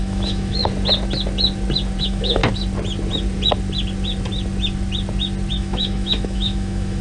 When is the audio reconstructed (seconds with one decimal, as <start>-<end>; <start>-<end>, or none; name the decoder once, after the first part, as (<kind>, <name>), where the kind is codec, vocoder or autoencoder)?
0.0-0.6 (autoencoder, DAC-VAE); 2.0-2.4; 5.5-7.0